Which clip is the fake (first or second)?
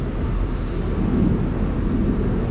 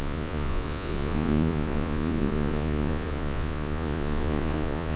second